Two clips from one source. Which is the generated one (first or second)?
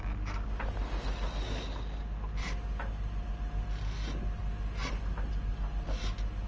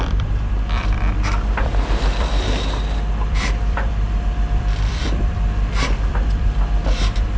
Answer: second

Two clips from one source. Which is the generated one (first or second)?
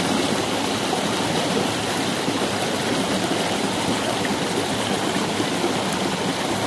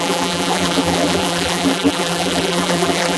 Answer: second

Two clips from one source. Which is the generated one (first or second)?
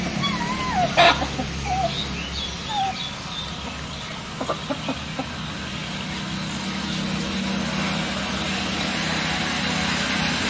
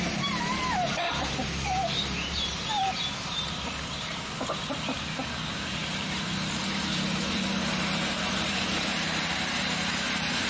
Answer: second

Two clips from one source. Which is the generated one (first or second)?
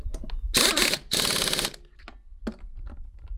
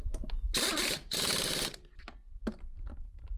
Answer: second